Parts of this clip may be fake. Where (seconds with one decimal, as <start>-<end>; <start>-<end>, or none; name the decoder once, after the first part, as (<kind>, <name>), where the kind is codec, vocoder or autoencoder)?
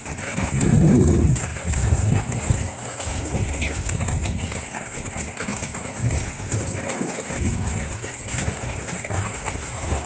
0.0-10.1 (codec, SNAC)